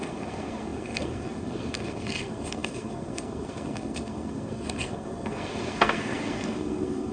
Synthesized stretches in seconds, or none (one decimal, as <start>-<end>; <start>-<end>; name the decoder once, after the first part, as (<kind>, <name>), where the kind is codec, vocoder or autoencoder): 0.0-7.1 (codec, SNAC)